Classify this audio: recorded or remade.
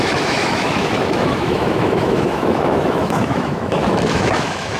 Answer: remade